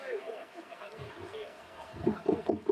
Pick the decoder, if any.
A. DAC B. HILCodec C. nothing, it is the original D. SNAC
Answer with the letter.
D